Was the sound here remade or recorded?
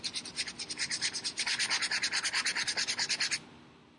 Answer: recorded